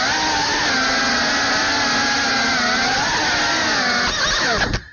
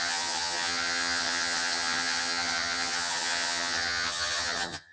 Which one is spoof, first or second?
second